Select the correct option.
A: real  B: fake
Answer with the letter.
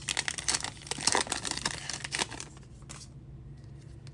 A